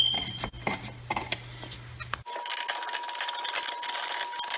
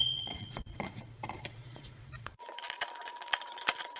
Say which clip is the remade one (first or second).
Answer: second